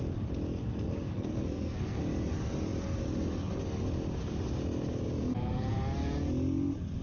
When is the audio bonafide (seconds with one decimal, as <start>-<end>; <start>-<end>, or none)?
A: 0.0-0.6; 2.0-7.0